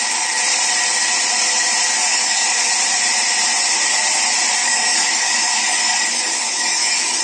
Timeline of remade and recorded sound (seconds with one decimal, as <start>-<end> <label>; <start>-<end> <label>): 0.0-2.1 recorded; 2.1-2.7 remade; 2.7-4.6 recorded; 4.6-7.2 remade